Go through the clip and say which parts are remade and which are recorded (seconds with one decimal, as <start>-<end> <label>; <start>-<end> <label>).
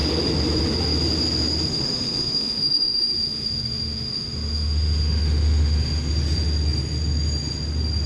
0.0-1.7 recorded; 1.7-6.1 remade; 6.1-8.1 recorded